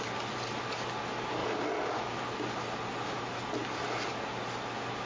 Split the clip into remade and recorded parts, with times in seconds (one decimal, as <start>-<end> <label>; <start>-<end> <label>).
0.0-5.0 recorded